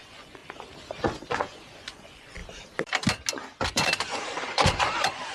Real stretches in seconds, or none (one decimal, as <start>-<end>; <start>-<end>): 0.4-1.3; 2.4-3.7